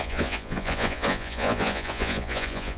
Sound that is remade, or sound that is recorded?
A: remade